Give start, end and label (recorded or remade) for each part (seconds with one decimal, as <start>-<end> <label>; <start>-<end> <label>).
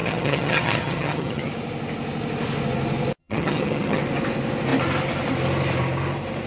0.0-1.5 remade; 1.5-3.2 recorded; 3.2-4.0 remade; 4.0-6.5 recorded